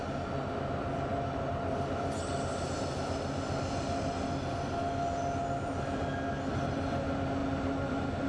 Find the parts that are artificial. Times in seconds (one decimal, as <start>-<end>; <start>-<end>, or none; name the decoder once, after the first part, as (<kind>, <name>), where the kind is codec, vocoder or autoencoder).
none